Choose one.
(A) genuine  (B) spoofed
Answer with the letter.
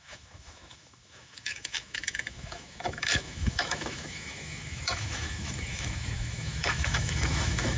B